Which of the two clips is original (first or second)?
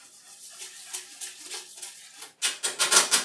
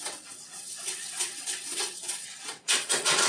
first